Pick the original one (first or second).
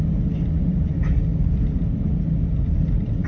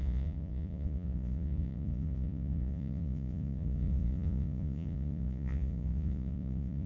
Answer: first